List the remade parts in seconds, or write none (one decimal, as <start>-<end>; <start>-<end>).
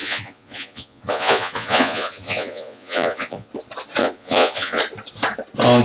0.0-3.5; 4.0-4.8